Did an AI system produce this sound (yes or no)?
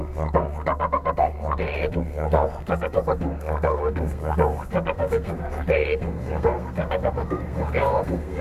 yes